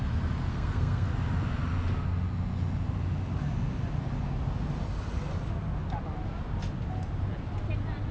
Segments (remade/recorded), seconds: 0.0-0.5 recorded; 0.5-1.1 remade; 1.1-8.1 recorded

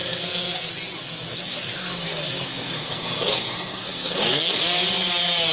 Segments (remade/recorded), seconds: 0.0-0.7 remade; 0.7-1.3 recorded; 1.3-4.6 remade; 4.6-5.5 recorded

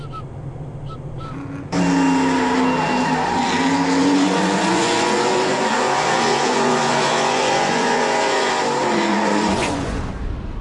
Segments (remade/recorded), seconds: 0.0-4.0 recorded; 4.0-8.5 remade; 8.5-9.1 recorded; 9.1-10.1 remade; 10.1-10.6 recorded

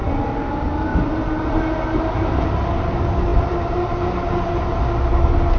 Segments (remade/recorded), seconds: 0.0-5.6 recorded